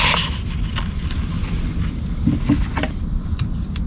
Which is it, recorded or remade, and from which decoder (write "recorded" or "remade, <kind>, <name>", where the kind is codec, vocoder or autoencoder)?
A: recorded